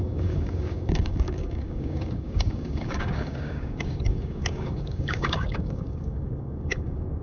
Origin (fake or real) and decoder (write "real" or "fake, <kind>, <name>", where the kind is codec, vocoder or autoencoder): fake, codec, DAC